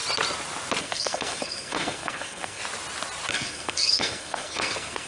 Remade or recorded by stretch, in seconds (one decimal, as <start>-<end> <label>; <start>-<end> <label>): 0.0-0.8 recorded; 0.8-2.6 remade; 2.6-3.3 recorded; 3.3-5.1 remade